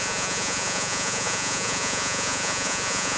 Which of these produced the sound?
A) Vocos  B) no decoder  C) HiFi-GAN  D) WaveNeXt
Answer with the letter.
A